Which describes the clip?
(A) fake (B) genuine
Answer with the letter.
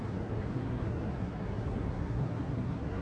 A